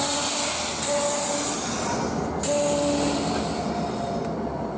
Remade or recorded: recorded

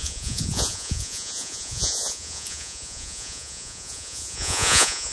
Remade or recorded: remade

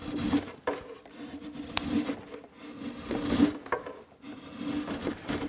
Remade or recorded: recorded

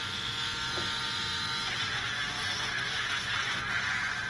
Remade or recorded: remade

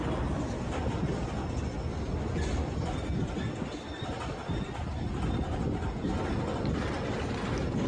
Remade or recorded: recorded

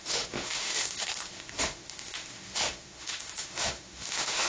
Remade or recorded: remade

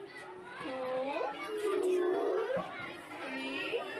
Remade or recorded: recorded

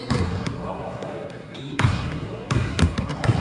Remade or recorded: remade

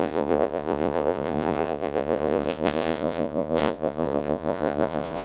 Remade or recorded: remade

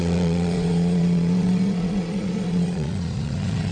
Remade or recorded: remade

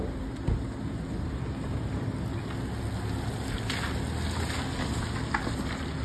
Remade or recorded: recorded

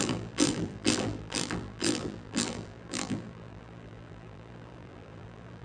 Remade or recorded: remade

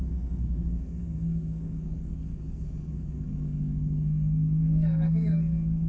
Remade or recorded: remade